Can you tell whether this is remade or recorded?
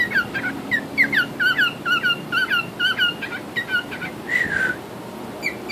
recorded